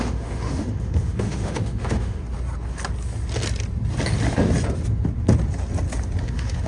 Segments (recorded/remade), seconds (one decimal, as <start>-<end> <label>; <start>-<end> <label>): 0.0-2.2 remade; 2.2-6.2 recorded; 6.2-6.7 remade